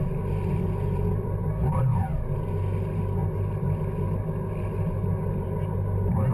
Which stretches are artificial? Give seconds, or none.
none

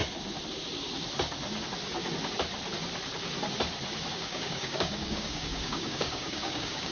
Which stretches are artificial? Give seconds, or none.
4.1-6.9 (codec, DAC)